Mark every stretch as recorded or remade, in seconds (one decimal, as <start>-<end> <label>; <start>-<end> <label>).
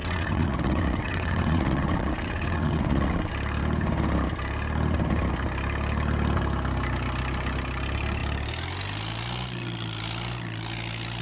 0.0-3.3 remade; 3.3-11.2 recorded